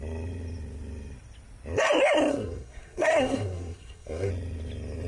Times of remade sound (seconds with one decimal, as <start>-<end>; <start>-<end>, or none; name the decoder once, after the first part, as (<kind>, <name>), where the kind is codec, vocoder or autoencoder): 2.3-4.3 (codec, SNAC)